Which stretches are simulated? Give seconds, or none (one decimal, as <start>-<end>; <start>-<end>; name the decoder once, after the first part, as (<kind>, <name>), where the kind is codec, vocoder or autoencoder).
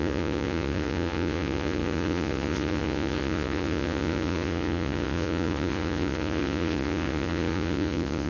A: 0.0-8.3 (vocoder, Vocos)